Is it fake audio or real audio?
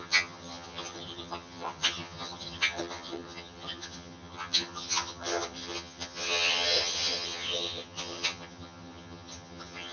fake